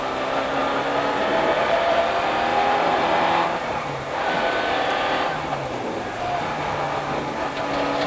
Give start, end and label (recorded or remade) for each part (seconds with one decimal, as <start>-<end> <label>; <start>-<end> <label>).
0.0-0.6 recorded; 0.6-2.0 remade; 2.0-2.5 recorded; 2.5-6.4 remade; 6.4-8.1 recorded